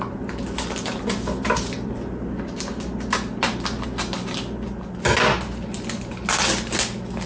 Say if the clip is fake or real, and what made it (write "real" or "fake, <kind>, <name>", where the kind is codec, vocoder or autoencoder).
real